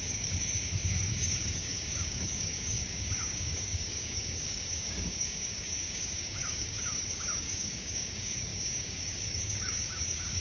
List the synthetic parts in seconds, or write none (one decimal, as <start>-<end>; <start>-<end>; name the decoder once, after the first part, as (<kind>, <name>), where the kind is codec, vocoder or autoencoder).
0.0-10.4 (codec, DAC)